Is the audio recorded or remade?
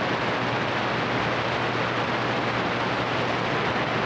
recorded